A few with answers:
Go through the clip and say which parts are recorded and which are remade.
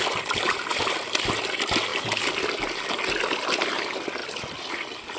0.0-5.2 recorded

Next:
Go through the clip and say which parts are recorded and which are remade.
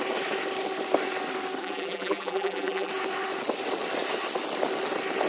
0.0-1.6 recorded; 1.6-2.9 remade; 2.9-5.3 recorded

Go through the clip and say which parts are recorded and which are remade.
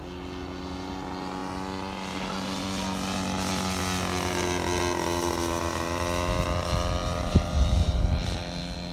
0.0-7.0 recorded; 7.0-8.1 remade; 8.1-8.9 recorded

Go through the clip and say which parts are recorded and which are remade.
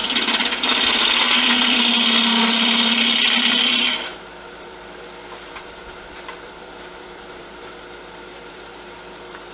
0.0-9.5 remade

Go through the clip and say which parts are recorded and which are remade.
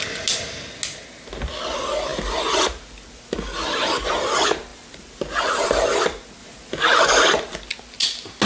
0.0-4.7 recorded; 4.7-5.9 remade; 5.9-8.5 recorded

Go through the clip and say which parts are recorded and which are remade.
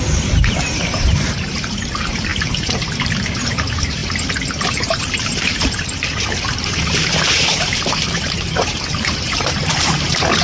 0.0-4.0 remade; 4.0-4.7 recorded; 4.7-10.4 remade